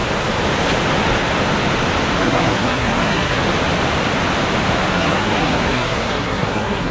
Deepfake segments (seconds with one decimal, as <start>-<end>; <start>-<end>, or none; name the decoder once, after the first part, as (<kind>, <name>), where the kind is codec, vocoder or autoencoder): 2.2-3.4 (codec, SNAC); 4.9-6.9